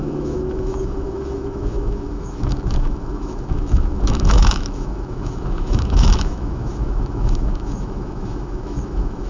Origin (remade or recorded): remade